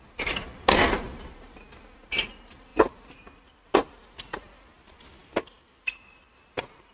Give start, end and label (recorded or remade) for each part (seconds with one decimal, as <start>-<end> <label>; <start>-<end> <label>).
0.0-6.9 recorded

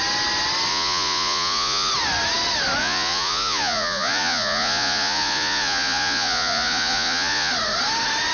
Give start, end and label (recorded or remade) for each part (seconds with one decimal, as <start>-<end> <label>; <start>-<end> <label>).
0.0-0.7 recorded; 0.7-1.9 remade; 1.9-2.8 recorded; 2.8-7.5 remade; 7.5-8.3 recorded